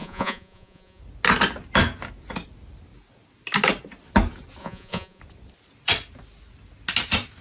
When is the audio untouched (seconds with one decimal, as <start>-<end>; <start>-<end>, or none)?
1.0-4.6; 5.2-7.4